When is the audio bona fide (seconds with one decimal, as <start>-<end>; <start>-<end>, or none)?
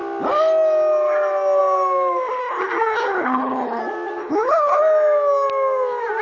0.0-2.4; 3.8-4.2; 4.8-6.2